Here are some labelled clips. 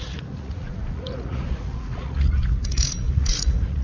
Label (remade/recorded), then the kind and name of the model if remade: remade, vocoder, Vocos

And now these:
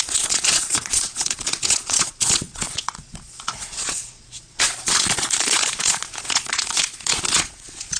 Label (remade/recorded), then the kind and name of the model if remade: remade, vocoder, Vocos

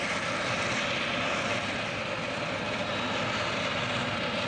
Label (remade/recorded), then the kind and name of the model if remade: recorded